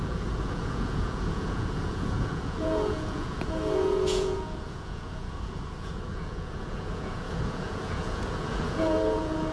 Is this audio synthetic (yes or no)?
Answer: yes